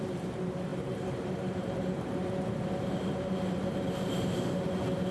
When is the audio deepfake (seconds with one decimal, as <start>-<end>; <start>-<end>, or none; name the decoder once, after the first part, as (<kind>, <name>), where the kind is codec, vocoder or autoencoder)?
0.0-2.2 (vocoder, BigVGAN v2); 3.1-5.1